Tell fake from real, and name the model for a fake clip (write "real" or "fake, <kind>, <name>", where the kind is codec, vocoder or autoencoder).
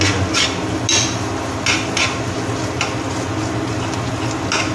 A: real